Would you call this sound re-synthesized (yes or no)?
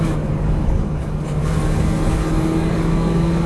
yes